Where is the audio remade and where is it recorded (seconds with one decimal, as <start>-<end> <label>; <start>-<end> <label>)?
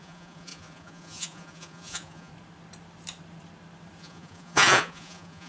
0.0-2.3 remade; 2.3-4.0 recorded; 4.0-5.5 remade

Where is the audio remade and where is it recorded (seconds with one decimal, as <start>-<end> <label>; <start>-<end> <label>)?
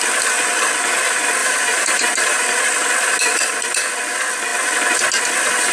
0.0-1.4 recorded; 1.4-2.6 remade; 2.6-5.7 recorded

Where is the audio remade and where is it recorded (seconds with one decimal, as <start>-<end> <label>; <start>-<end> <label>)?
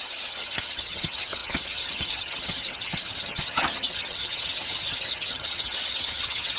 0.0-6.6 remade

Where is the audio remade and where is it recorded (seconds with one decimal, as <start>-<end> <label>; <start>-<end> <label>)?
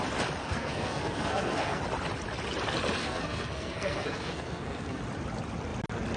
0.0-0.4 recorded; 0.4-1.8 remade; 1.8-3.0 recorded; 3.0-5.0 remade; 5.0-6.2 recorded